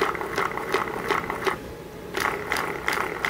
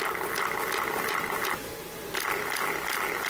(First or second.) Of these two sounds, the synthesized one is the first